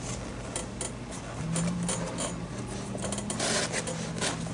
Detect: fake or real real